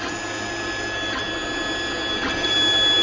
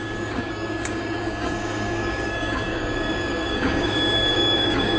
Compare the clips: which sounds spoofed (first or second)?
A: second